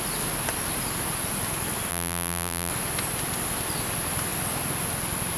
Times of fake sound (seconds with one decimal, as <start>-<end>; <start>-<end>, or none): 1.9-2.7